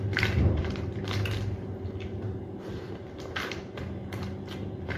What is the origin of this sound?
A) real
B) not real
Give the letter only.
A